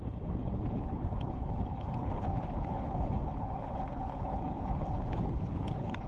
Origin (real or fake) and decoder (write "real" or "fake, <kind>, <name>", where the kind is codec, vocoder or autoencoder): fake, codec, HILCodec